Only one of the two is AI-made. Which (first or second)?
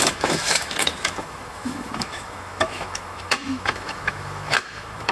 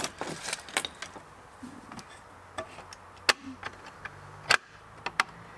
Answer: first